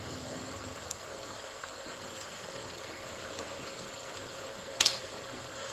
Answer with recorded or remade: remade